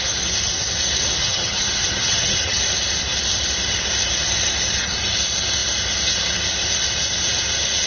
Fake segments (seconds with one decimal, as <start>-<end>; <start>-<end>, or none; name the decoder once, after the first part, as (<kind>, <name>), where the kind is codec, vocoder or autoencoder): 1.2-2.6 (vocoder, HiFi-GAN)